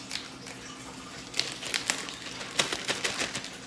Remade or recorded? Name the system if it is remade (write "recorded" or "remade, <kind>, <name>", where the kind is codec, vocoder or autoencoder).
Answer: recorded